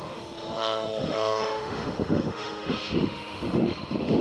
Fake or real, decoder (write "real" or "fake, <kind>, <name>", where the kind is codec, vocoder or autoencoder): fake, autoencoder, DAC-VAE